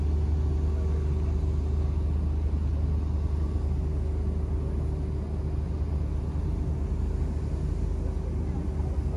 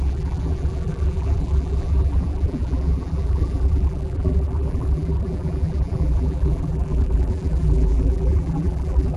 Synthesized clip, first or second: second